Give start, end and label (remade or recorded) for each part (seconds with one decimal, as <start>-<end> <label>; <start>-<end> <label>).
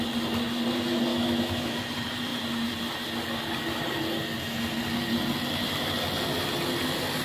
0.0-1.1 recorded; 1.1-1.8 remade; 1.8-7.2 recorded